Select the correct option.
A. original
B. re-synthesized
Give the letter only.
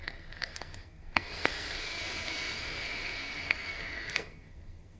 B